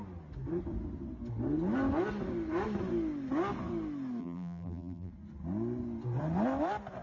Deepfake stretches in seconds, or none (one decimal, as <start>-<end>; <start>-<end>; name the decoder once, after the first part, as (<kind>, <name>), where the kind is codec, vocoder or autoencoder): 4.2-5.1 (vocoder, BigVGAN v2)